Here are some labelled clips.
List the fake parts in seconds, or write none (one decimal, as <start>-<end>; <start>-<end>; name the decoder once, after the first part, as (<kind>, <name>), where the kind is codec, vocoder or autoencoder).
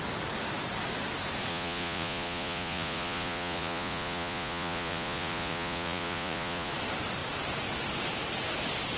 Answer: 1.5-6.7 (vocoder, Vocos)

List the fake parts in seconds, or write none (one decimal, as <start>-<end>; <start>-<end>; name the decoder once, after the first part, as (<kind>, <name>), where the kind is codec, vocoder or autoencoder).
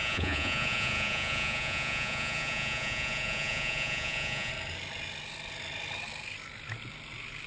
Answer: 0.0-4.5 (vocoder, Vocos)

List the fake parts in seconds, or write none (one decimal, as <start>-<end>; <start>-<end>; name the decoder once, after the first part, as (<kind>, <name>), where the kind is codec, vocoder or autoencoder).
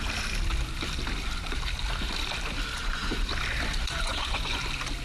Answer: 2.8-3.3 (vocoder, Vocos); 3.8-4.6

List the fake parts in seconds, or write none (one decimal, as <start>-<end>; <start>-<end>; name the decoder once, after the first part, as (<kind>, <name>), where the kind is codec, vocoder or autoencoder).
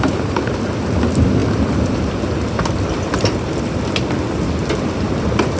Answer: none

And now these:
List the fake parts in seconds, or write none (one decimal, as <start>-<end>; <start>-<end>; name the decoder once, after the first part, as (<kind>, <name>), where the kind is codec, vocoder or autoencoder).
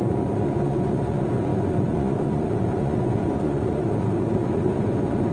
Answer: 0.0-5.3 (vocoder, Vocos)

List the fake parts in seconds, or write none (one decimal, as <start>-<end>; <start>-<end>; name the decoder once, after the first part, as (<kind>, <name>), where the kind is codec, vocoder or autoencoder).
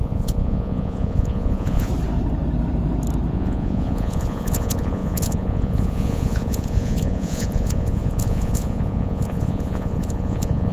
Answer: 0.0-1.9 (vocoder, Vocos); 3.3-10.7